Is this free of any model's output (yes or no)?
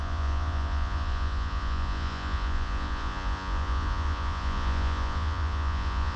no